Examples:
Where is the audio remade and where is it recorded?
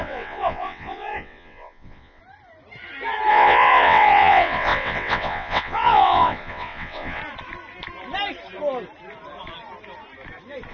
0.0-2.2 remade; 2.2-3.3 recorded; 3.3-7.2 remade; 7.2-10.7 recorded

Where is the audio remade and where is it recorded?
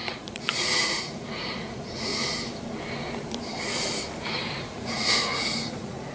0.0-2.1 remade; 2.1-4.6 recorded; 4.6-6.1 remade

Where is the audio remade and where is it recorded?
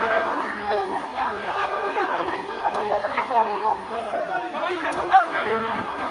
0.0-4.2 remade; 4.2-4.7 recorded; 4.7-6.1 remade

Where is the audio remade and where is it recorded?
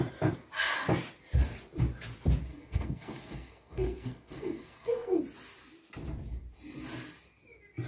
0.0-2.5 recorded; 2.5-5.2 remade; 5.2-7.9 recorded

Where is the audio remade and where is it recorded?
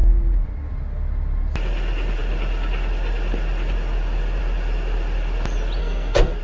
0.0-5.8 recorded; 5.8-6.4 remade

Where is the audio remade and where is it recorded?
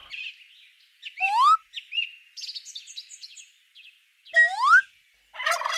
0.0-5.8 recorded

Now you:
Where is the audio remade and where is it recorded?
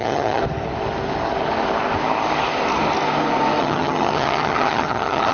0.0-0.4 remade; 0.4-3.6 recorded; 3.6-5.3 remade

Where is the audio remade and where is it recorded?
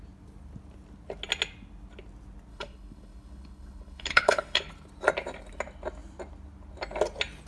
0.0-2.5 recorded; 2.5-4.7 remade; 4.7-7.5 recorded